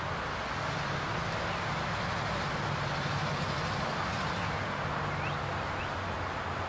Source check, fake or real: real